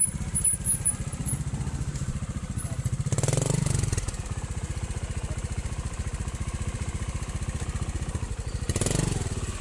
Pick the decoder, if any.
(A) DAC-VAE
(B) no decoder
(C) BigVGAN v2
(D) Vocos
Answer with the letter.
C